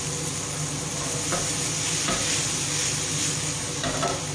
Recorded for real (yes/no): yes